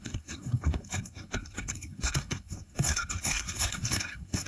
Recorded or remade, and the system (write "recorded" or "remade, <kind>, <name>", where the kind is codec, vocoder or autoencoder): remade, codec, SNAC